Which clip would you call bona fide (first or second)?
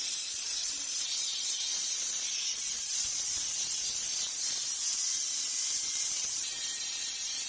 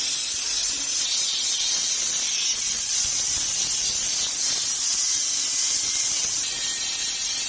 second